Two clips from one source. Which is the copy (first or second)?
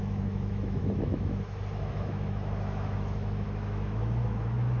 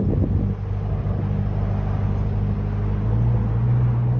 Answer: first